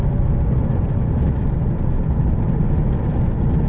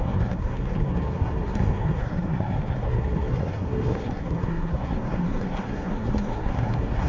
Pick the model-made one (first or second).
second